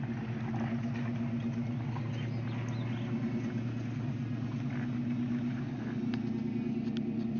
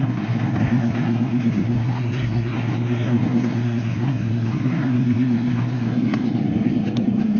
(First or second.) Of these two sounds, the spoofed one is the second